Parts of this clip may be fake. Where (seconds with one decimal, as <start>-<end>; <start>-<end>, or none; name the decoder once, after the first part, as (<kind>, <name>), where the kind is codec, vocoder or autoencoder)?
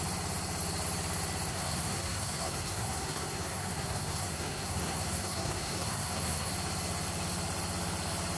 1.5-6.5 (codec, SNAC)